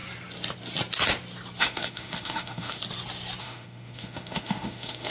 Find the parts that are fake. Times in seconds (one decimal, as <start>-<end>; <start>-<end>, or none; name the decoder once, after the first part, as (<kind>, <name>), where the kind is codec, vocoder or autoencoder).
1.6-2.8 (autoencoder, DAC-VAE); 3.4-5.1